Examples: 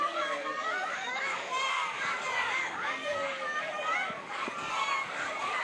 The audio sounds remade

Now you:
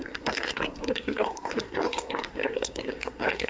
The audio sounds remade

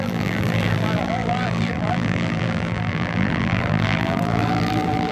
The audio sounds remade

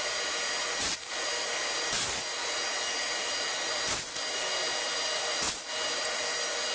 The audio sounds recorded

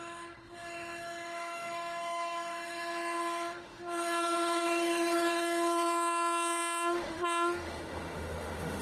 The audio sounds remade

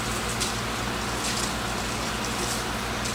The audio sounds remade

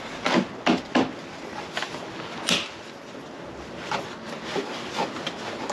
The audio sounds recorded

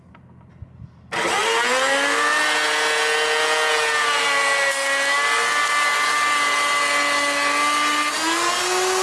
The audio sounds recorded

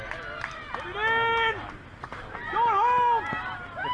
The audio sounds recorded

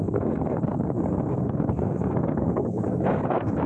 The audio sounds remade